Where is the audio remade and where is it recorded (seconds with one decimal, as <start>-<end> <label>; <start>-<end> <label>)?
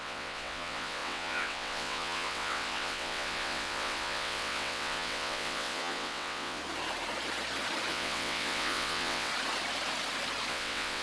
0.0-6.6 remade; 6.6-7.9 recorded; 7.9-9.3 remade; 9.3-10.5 recorded; 10.5-11.0 remade